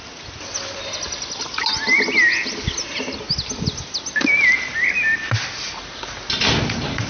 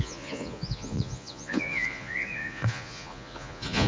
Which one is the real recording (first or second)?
first